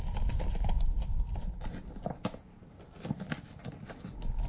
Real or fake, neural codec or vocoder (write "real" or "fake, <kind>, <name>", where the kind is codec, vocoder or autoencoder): real